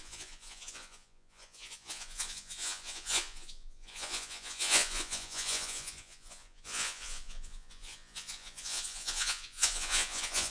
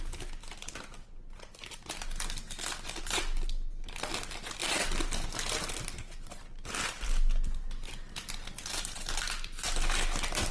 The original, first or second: second